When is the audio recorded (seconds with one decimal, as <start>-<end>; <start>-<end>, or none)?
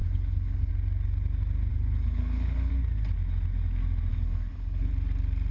0.7-1.7; 2.7-4.1; 4.9-5.5